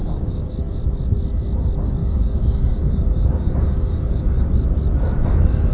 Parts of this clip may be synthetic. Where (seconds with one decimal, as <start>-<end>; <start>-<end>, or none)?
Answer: 0.0-0.5; 2.0-4.4